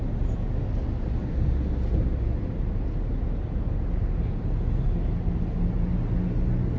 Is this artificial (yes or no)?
no